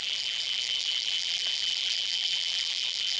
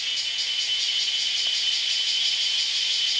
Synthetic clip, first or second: first